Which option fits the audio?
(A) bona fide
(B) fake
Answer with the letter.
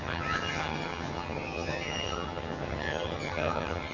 B